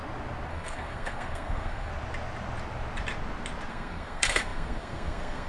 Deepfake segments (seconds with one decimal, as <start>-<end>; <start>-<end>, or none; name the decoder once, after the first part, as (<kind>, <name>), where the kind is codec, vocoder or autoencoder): 0.5-1.9 (codec, SNAC); 3.7-5.5